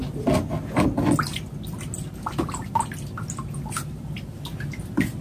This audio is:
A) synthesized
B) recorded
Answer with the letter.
B